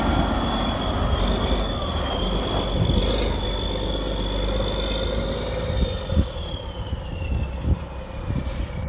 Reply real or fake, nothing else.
real